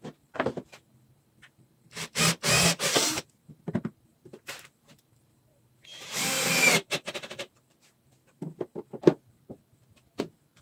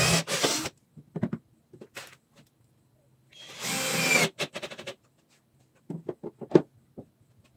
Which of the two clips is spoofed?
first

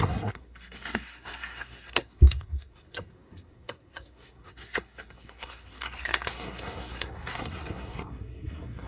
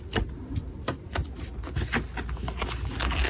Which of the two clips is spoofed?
first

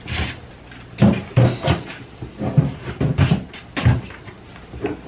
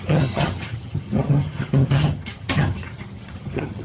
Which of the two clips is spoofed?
second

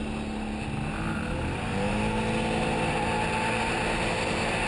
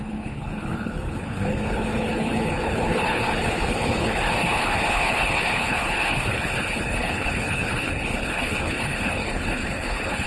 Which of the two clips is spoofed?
second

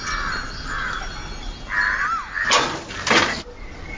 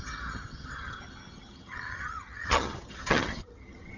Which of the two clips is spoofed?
second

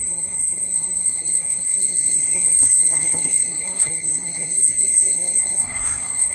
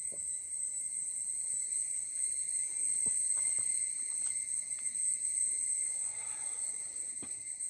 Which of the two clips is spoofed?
first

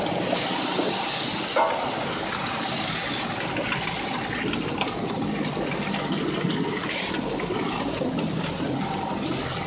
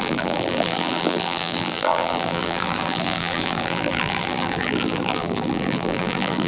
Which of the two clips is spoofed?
second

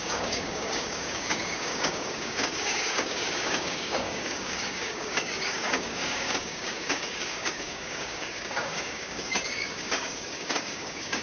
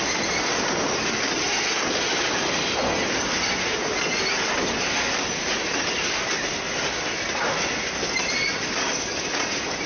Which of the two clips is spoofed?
first